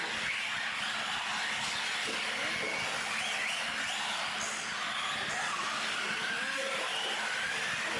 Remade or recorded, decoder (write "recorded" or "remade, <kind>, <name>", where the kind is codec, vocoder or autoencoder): recorded